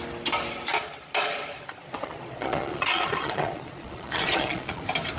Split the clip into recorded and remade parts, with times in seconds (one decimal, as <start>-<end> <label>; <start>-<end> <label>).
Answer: 0.0-1.8 recorded; 1.8-4.8 remade; 4.8-5.2 recorded